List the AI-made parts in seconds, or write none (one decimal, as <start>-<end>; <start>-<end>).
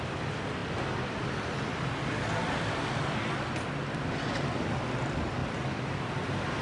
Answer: none